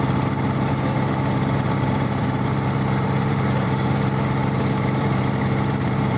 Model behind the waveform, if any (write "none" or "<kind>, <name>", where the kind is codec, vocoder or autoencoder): vocoder, BigVGAN v2